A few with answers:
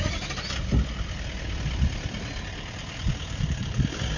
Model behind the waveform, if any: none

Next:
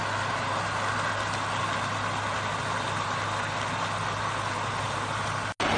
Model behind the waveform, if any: none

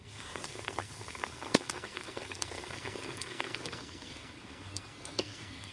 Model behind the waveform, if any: codec, SNAC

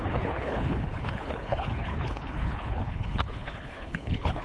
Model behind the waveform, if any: codec, HILCodec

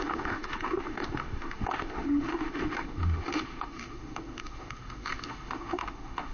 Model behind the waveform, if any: autoencoder, DAC-VAE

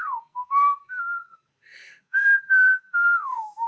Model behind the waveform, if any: codec, SNAC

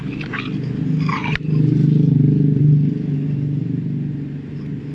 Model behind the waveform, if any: none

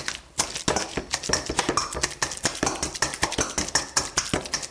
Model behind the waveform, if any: none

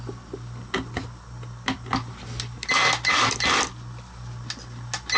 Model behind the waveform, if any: none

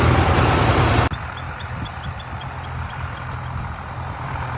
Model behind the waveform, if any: none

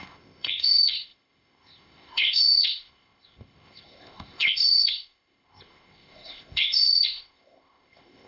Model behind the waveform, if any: codec, ZipCodec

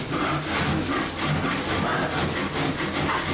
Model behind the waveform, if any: none